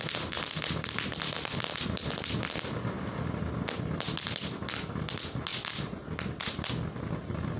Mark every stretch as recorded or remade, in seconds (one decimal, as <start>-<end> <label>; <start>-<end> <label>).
0.0-7.6 recorded